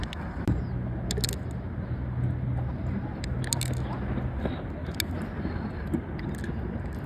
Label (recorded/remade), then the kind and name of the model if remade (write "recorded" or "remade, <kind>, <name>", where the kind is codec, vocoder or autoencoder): recorded